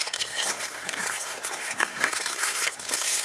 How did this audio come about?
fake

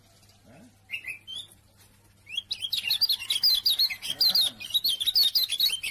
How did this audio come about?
real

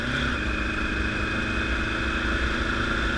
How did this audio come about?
real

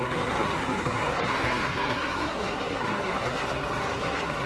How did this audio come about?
fake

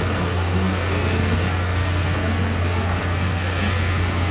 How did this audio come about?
fake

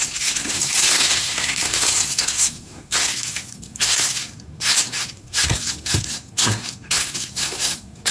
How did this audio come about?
fake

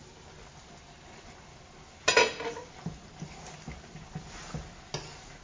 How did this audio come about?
real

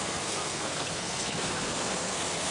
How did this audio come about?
fake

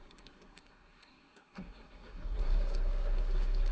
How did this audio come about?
fake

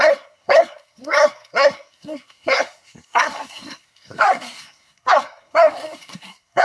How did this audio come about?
fake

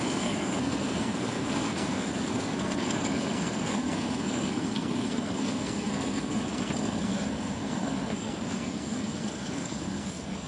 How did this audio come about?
fake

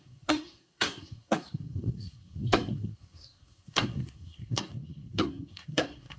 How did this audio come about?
fake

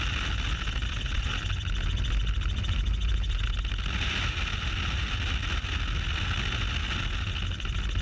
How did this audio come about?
real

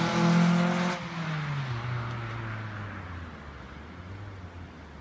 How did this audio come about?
real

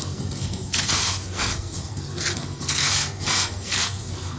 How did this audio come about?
fake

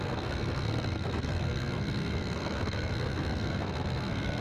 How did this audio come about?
fake